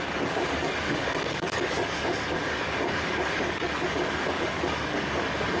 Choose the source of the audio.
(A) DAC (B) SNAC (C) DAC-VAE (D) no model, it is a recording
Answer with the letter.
A